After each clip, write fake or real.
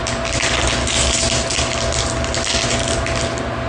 real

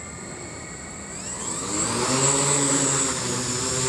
real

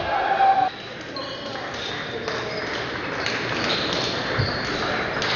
real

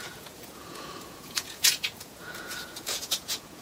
fake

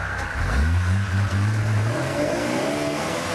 fake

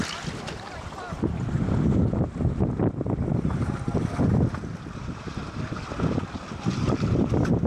real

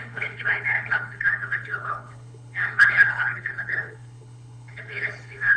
fake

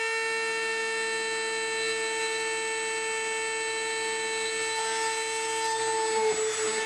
real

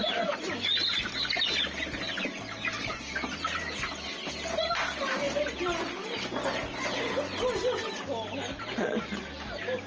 real